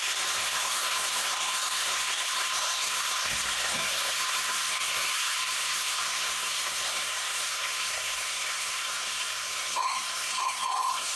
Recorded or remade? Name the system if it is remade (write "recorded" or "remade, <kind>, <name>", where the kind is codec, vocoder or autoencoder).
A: remade, codec, SNAC